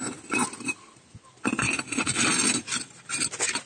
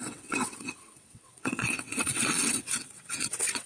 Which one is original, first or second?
first